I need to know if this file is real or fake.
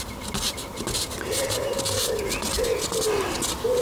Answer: real